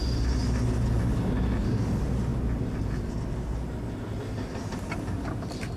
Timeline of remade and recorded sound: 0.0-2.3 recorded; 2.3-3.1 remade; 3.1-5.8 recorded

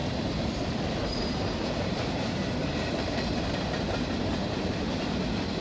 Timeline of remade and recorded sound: 0.0-3.4 remade; 3.4-3.9 recorded; 3.9-4.9 remade; 4.9-5.6 recorded

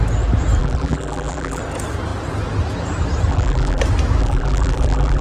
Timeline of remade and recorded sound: 0.0-0.6 recorded; 0.6-1.6 remade; 1.6-3.3 recorded; 3.3-3.8 remade; 3.8-4.2 recorded; 4.2-5.2 remade

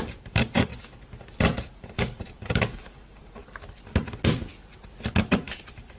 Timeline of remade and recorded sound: 0.0-0.7 remade; 0.7-1.7 recorded; 1.7-3.4 remade; 3.4-5.3 recorded; 5.3-6.0 remade

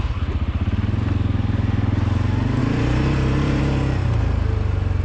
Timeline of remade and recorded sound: 0.0-2.6 recorded; 2.6-3.6 remade; 3.6-5.0 recorded

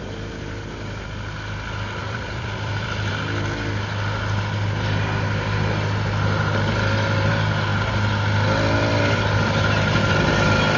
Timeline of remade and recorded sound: 0.0-2.0 recorded; 2.0-3.1 remade; 3.1-10.8 recorded